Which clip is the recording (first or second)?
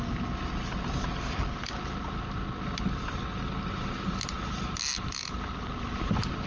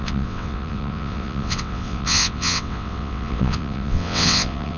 first